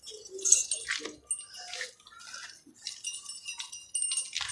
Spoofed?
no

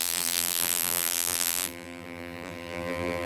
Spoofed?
yes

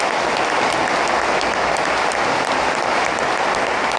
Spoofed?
no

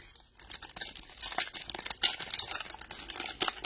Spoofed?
no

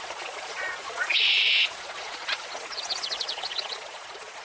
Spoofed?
yes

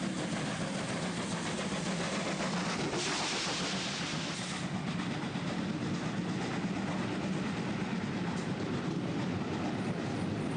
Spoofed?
no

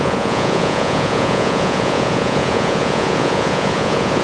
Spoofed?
yes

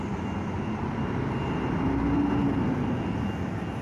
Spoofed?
no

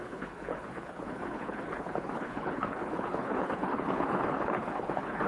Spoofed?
yes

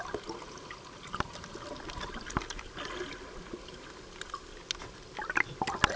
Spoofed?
no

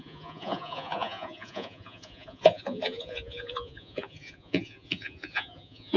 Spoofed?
yes